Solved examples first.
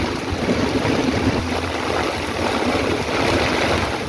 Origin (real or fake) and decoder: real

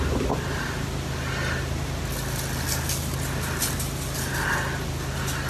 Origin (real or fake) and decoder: real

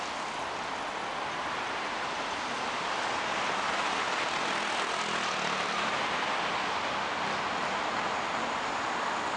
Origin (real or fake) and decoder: real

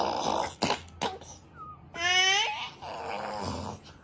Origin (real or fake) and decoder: real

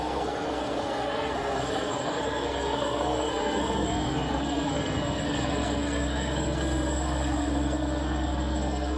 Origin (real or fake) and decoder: fake, codec, SNAC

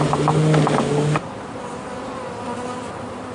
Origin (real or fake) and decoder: real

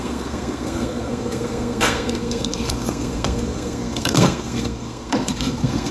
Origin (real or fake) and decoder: fake, codec, SNAC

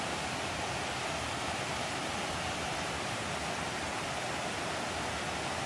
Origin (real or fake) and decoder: real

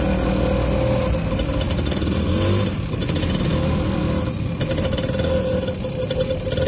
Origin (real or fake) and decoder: real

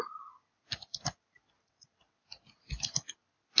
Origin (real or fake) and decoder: real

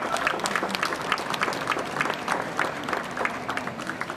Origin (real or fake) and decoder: real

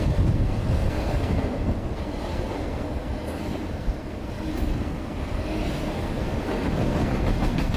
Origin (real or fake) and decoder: fake, codec, SNAC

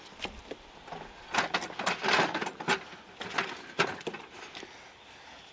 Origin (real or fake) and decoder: real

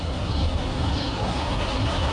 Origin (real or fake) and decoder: fake, codec, SNAC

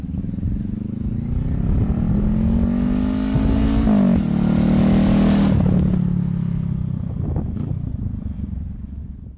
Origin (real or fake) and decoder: real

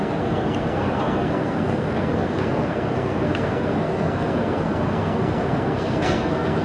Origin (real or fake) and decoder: fake, codec, SNAC